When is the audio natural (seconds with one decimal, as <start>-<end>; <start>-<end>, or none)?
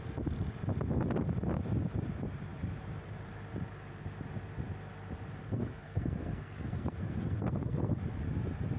0.0-5.4; 8.0-8.8